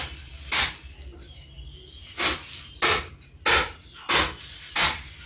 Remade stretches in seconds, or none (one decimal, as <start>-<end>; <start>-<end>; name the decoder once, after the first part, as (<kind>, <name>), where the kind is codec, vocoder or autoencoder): none